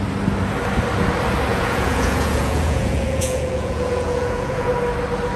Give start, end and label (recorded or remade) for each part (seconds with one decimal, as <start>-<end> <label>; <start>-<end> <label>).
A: 0.0-1.5 recorded; 1.5-4.7 remade; 4.7-5.4 recorded